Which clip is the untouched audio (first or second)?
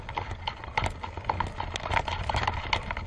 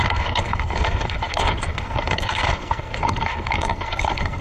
first